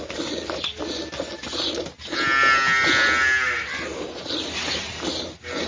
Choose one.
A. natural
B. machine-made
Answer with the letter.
A